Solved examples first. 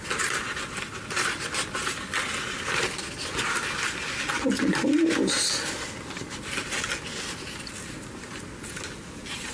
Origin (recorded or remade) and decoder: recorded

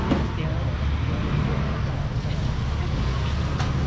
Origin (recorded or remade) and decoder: recorded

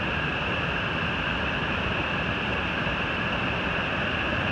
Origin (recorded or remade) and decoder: remade, vocoder, BigVGAN v2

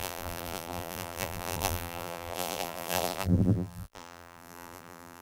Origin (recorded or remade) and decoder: remade, vocoder, BigVGAN v2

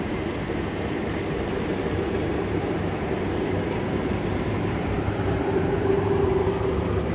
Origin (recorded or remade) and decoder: remade, vocoder, BigVGAN v2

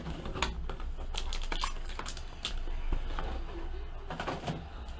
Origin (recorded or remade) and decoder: recorded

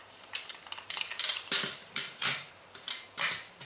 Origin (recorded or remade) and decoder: remade, vocoder, BigVGAN v2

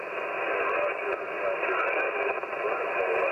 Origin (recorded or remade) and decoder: recorded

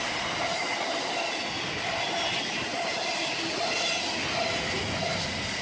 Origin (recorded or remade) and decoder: recorded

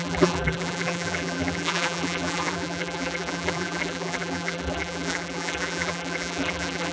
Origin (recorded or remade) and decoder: remade, vocoder, BigVGAN v2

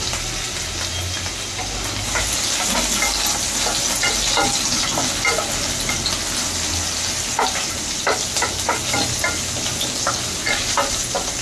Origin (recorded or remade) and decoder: recorded